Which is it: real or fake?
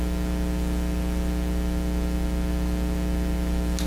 real